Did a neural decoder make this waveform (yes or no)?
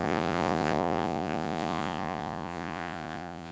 yes